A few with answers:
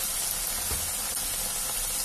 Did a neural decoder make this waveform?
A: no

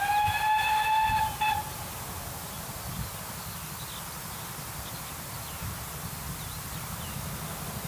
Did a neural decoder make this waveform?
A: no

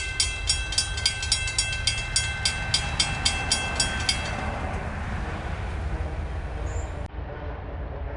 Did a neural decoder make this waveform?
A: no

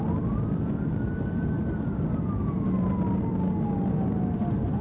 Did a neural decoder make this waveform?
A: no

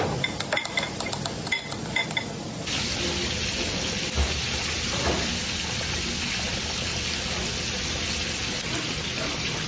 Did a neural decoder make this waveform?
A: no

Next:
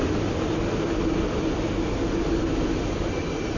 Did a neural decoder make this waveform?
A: no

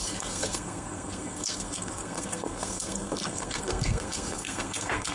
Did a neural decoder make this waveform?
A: yes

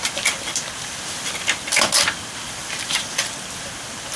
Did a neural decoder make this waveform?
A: no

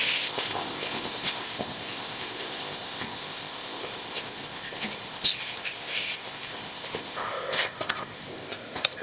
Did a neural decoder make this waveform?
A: yes